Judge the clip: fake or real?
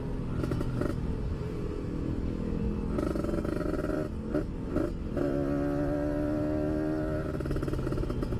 real